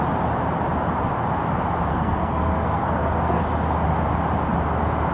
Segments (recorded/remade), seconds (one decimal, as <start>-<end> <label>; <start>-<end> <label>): 0.0-1.9 recorded; 1.9-3.4 remade; 3.4-5.1 recorded